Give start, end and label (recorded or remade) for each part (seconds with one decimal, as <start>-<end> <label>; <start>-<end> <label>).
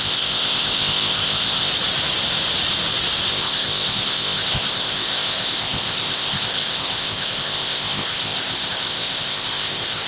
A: 0.0-1.7 remade; 1.7-3.3 recorded; 3.3-10.1 remade